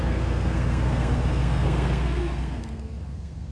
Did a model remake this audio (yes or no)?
yes